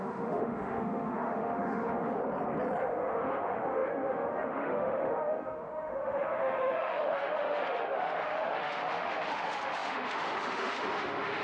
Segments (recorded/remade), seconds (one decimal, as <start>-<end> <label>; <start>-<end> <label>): 0.0-2.2 remade; 2.2-2.8 recorded; 2.8-11.4 remade